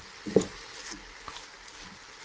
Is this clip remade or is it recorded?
recorded